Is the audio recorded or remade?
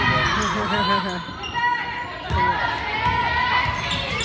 recorded